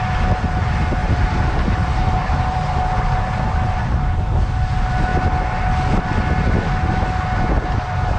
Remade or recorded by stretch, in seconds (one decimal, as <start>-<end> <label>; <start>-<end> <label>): 0.0-1.0 recorded; 1.0-2.8 remade; 2.8-8.2 recorded

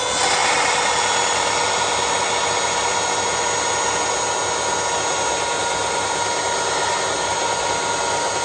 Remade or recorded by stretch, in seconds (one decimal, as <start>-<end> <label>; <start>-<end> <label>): 0.0-8.4 recorded

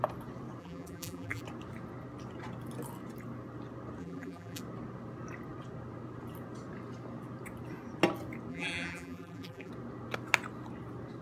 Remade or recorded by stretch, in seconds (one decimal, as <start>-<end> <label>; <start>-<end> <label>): 0.0-0.6 recorded; 0.6-1.4 remade; 1.4-4.0 recorded; 4.0-4.6 remade; 4.6-8.5 recorded; 8.5-9.7 remade; 9.7-11.2 recorded

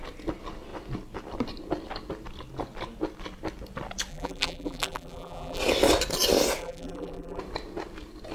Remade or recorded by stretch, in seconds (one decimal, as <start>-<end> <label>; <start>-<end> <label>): 0.0-4.1 recorded; 4.1-5.6 remade; 5.6-6.6 recorded; 6.6-7.4 remade; 7.4-8.3 recorded

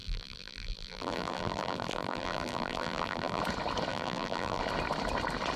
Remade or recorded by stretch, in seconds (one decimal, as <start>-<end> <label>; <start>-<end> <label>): 0.0-3.4 remade; 3.4-3.9 recorded; 3.9-4.6 remade; 4.6-5.6 recorded